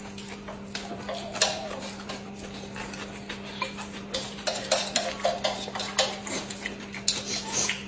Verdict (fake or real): real